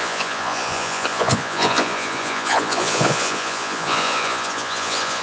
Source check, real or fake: fake